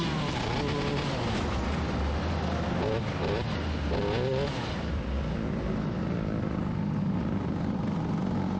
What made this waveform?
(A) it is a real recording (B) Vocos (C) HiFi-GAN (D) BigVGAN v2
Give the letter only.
A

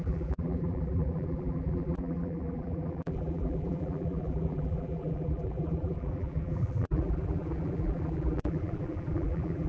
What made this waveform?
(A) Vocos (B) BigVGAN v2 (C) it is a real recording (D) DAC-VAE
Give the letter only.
B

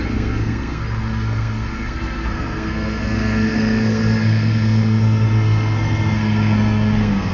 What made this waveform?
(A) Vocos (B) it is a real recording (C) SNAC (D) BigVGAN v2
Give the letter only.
C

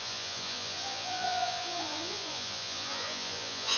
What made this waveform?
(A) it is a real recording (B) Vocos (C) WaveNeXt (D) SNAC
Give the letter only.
B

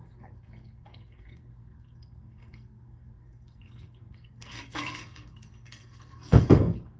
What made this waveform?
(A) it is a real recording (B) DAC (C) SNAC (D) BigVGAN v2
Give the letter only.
C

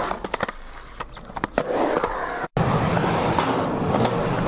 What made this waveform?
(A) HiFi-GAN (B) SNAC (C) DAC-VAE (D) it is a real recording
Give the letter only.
D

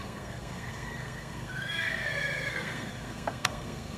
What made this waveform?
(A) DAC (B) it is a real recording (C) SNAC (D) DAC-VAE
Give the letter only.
C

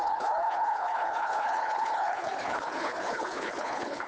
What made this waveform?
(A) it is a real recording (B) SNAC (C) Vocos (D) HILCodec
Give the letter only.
D